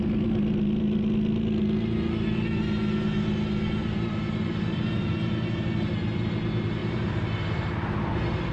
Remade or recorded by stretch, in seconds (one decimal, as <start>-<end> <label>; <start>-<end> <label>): 0.0-3.8 recorded; 3.8-5.1 remade; 5.1-6.8 recorded; 6.8-8.5 remade